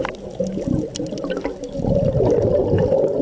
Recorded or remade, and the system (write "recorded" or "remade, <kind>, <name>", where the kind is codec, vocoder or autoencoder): recorded